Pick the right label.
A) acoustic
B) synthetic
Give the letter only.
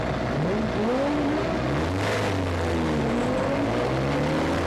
A